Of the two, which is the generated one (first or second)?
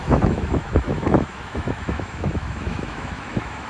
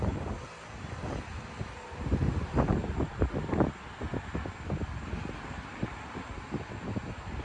first